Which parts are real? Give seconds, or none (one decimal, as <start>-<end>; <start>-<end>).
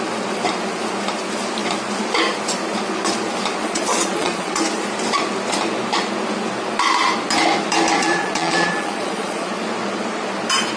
0.0-3.6; 4.6-8.0; 9.5-10.8